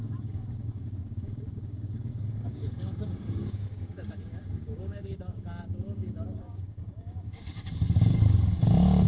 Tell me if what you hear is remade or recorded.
remade